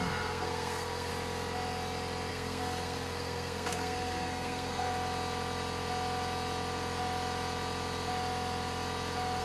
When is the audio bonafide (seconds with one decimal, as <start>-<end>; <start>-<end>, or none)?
1.1-2.3; 4.9-9.4